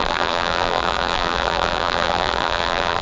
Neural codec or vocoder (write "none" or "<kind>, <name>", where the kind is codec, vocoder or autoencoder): vocoder, BigVGAN v2